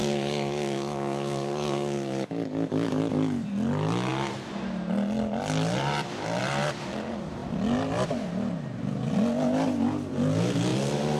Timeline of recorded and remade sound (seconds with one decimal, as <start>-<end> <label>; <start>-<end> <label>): 0.0-3.0 remade; 3.0-11.2 recorded